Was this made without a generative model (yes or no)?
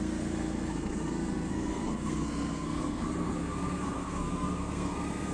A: no